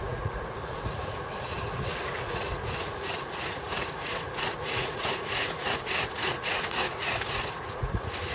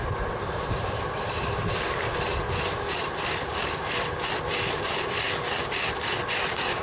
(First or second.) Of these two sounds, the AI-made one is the first